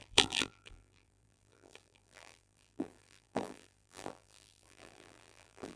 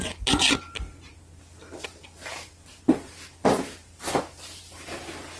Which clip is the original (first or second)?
second